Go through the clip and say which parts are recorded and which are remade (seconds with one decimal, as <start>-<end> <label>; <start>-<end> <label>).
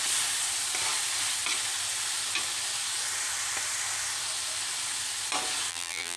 0.0-5.7 recorded; 5.7-6.2 remade